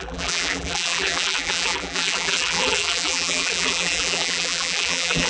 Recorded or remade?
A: remade